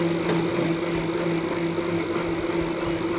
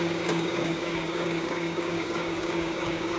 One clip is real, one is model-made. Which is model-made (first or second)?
second